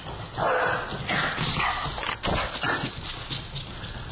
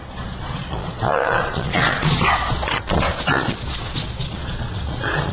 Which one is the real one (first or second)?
first